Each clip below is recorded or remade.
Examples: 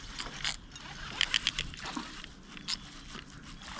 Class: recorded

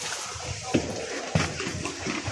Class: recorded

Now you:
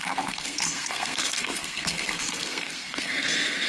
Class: remade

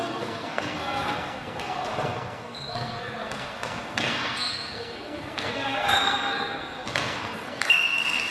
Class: remade